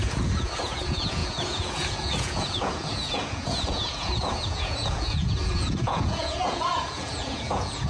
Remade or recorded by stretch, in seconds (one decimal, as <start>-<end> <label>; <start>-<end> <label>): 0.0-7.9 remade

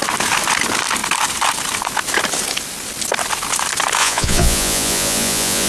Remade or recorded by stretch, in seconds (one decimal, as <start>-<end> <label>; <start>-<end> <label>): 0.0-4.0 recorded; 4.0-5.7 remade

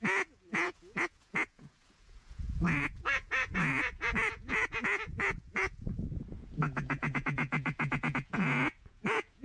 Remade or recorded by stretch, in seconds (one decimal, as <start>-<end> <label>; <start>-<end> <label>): 0.0-9.4 remade